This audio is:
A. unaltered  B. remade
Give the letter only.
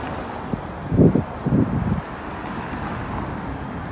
A